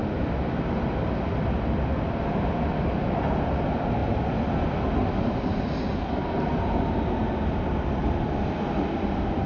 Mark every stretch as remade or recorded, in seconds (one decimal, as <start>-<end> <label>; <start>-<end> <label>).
0.0-9.5 recorded